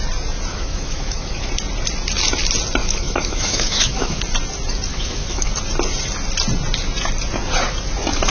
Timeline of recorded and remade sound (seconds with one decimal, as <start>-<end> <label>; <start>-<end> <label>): 0.0-0.5 recorded; 0.5-1.5 remade; 1.5-2.8 recorded; 2.8-4.2 remade; 4.2-4.9 recorded; 4.9-5.5 remade; 5.5-8.3 recorded